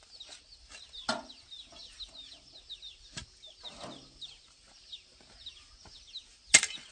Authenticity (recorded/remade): recorded